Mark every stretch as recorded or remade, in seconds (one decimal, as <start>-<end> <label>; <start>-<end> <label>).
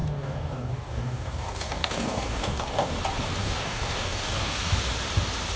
0.0-2.9 remade; 2.9-3.4 recorded; 3.4-4.7 remade; 4.7-5.6 recorded